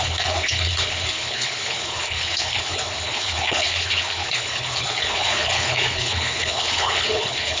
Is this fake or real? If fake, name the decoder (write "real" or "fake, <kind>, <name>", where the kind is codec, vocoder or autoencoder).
fake, codec, HILCodec